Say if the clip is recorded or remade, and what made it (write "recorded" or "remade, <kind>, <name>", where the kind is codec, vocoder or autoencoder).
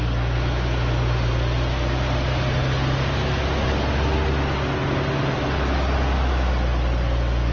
recorded